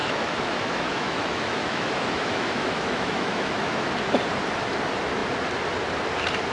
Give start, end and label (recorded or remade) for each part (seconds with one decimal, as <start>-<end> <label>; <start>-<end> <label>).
0.0-3.9 remade; 3.9-6.5 recorded